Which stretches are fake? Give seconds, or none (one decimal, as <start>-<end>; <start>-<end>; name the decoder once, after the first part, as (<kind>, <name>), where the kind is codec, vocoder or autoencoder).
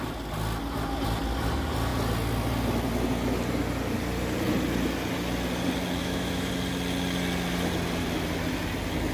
6.0-6.5 (autoencoder, DAC-VAE)